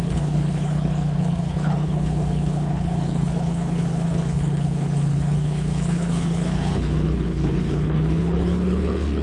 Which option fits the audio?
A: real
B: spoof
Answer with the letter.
B